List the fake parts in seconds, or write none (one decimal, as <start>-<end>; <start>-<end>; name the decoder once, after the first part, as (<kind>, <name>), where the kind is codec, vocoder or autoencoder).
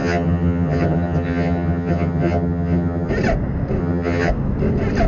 0.0-3.1 (vocoder, HiFi-GAN); 3.8-4.3